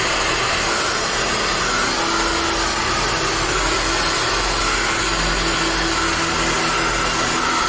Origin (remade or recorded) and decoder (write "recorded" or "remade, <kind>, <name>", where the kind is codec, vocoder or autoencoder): recorded